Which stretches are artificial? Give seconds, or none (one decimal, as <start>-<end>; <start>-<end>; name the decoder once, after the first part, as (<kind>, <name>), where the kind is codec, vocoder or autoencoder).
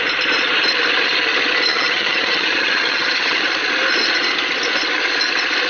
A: 1.7-3.4 (vocoder, HiFi-GAN)